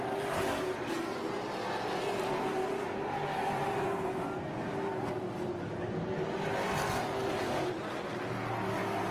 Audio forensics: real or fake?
real